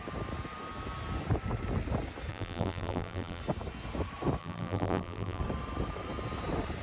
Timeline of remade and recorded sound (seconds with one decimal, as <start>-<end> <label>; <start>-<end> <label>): 0.0-2.3 recorded; 2.3-3.4 remade; 3.4-4.4 recorded; 4.4-5.4 remade; 5.4-6.8 recorded